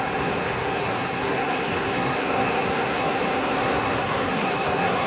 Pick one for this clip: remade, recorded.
remade